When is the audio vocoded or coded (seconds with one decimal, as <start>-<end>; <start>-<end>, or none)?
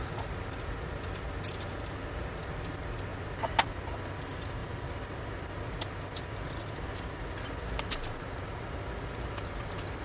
none